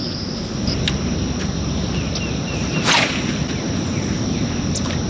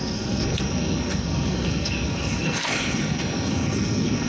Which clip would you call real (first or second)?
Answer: first